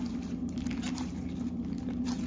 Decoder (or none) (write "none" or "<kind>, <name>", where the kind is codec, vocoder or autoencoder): none